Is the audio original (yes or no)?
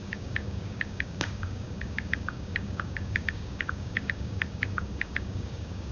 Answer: no